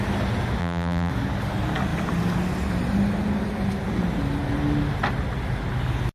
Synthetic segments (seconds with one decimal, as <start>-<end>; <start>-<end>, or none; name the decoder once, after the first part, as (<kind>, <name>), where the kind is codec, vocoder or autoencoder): 0.6-1.1 (vocoder, BigVGAN v2)